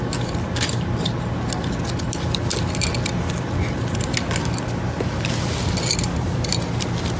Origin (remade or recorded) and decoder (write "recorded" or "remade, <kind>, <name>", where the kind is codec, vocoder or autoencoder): recorded